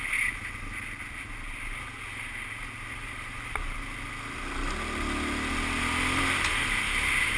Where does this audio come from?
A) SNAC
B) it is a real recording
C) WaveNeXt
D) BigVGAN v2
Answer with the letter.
B